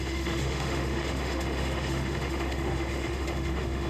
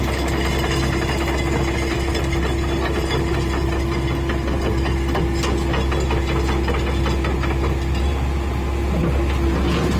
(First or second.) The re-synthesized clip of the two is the first